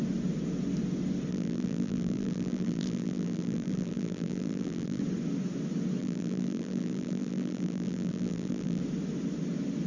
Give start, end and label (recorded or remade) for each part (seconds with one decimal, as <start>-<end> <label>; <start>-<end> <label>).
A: 0.0-1.3 recorded; 1.3-5.0 remade; 5.0-6.0 recorded; 6.0-8.8 remade; 8.8-9.9 recorded